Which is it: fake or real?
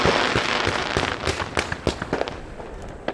real